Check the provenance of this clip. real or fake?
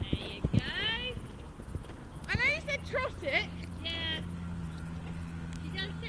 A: real